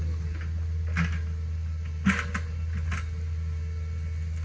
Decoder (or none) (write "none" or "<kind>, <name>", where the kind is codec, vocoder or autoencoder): none